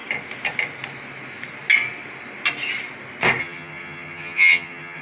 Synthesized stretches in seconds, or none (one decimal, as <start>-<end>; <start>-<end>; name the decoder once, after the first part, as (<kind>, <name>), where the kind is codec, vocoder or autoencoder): 3.4-5.0 (vocoder, HiFi-GAN)